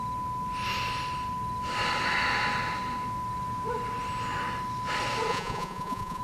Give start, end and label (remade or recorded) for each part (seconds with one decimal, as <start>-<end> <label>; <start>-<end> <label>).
0.0-5.3 recorded; 5.3-6.2 remade